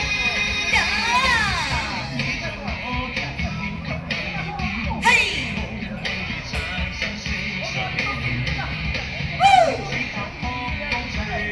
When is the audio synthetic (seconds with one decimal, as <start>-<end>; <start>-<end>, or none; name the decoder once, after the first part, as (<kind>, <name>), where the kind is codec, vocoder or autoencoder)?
0.0-1.1 (vocoder, BigVGAN v2); 3.3-4.2; 7.9-10.4; 11.1-11.5